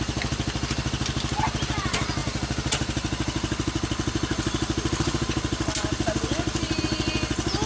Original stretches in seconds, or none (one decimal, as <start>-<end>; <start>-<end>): 0.0-7.7